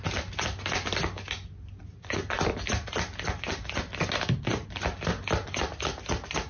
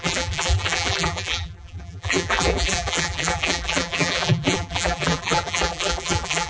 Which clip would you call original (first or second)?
first